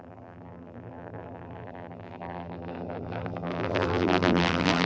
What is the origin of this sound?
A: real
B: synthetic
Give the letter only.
B